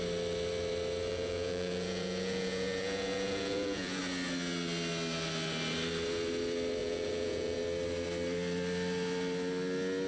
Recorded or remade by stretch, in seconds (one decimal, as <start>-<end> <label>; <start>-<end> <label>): 0.0-1.1 recorded; 1.1-4.0 remade; 4.0-6.8 recorded; 6.8-7.6 remade; 7.6-10.1 recorded